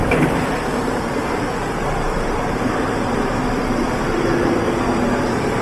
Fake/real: fake